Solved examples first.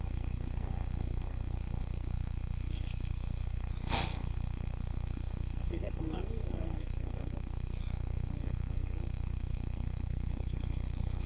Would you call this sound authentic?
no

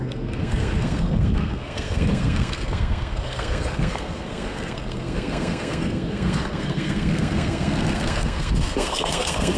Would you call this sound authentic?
no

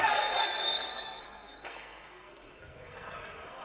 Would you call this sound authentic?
no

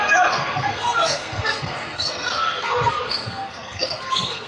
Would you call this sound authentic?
no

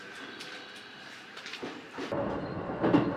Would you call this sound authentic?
yes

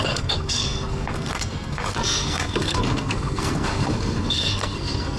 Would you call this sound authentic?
no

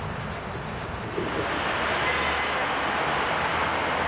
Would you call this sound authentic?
yes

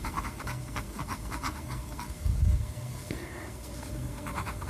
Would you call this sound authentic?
no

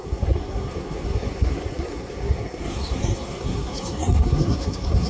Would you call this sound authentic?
no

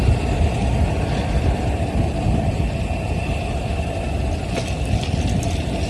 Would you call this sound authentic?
yes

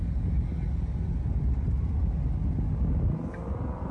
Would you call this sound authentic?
yes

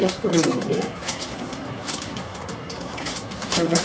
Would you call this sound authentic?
no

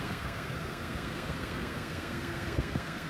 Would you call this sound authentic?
no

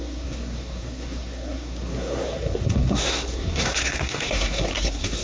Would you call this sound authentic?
no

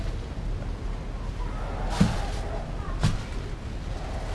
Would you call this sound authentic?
yes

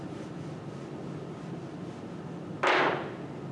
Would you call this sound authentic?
yes